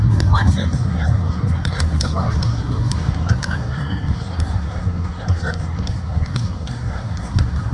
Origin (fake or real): fake